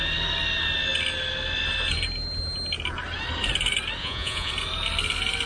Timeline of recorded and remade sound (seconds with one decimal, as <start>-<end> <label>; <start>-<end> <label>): 0.0-4.0 recorded; 4.0-4.5 remade; 4.5-5.5 recorded